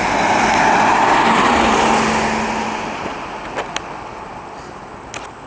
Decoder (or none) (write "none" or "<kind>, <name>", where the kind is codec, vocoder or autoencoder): none